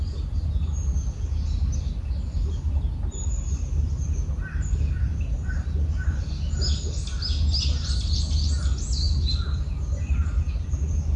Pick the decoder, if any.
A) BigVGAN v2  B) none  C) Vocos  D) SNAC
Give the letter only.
B